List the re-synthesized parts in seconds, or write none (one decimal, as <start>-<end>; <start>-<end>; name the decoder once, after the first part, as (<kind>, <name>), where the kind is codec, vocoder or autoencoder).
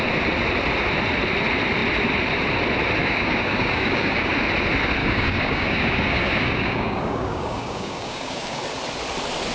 3.0-4.3 (codec, DAC); 5.0-8.6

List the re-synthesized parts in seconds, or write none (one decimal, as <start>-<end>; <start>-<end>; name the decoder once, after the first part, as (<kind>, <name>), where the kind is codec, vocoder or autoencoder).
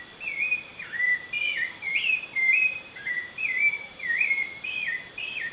0.7-1.4 (vocoder, BigVGAN v2); 1.9-5.5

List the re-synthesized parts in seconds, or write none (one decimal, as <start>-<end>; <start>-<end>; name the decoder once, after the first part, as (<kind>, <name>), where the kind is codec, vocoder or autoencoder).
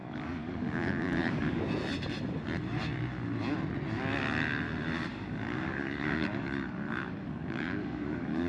0.0-1.6 (codec, DAC); 5.1-8.5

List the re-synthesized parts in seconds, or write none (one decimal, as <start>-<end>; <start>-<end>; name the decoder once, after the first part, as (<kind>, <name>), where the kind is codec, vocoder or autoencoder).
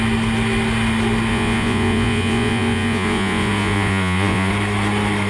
1.3-4.5 (vocoder, Vocos)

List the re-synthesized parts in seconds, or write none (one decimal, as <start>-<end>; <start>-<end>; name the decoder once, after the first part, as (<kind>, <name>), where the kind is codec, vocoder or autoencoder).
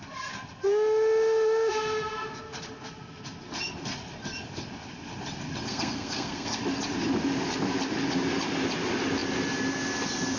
5.7-6.6 (codec, SNAC)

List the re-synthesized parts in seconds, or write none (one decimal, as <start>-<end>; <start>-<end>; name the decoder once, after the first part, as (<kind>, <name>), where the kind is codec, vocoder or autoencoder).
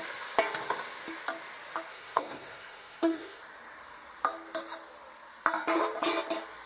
1.9-3.4 (codec, SNAC)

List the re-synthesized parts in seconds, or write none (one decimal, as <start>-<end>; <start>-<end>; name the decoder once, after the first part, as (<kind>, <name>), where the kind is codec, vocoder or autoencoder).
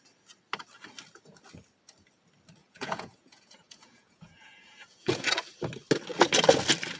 2.6-5.2 (vocoder, Vocos)